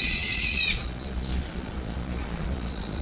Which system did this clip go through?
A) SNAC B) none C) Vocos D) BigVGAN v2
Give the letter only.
C